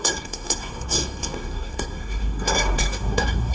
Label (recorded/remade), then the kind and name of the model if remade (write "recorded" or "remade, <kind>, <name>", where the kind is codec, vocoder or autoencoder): remade, codec, SNAC